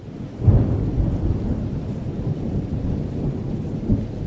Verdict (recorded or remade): recorded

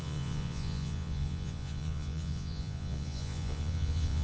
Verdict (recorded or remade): remade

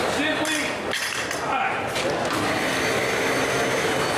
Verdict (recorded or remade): recorded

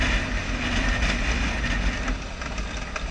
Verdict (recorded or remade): recorded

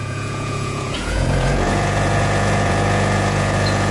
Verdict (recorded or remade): remade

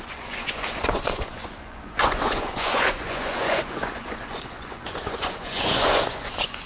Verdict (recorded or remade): remade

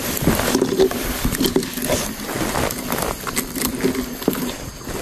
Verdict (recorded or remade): recorded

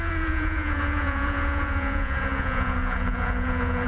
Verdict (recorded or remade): remade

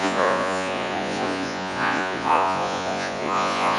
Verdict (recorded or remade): remade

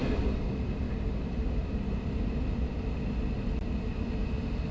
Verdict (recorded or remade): recorded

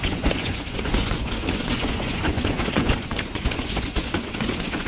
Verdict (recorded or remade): remade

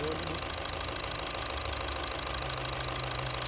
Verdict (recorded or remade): recorded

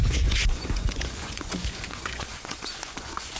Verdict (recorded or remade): remade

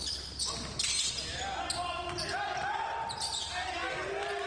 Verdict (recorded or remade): recorded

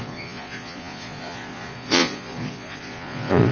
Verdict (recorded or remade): remade